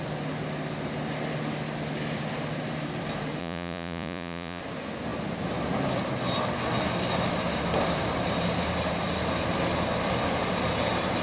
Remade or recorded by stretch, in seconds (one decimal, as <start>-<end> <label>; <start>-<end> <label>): 0.0-3.4 recorded; 3.4-4.6 remade; 4.6-11.2 recorded